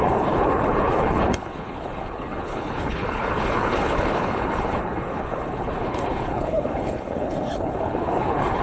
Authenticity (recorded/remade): remade